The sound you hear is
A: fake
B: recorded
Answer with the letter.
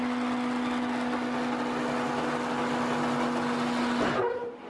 B